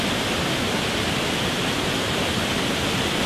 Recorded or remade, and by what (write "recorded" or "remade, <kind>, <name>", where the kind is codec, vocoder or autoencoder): recorded